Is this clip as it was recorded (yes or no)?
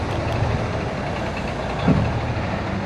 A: yes